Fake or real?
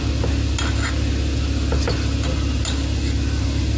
real